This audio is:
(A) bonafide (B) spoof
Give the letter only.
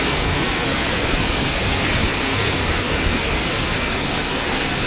B